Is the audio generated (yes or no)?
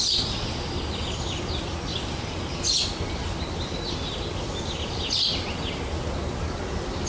no